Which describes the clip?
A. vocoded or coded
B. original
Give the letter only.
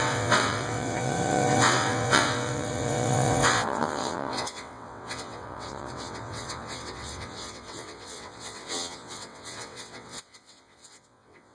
A